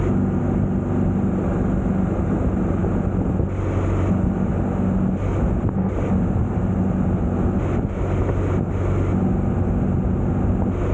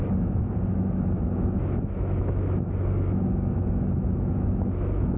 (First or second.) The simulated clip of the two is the second